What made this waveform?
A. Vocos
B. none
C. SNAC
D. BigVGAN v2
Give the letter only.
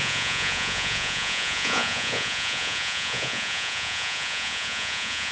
A